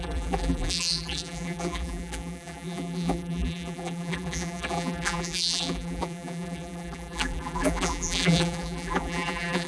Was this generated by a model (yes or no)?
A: yes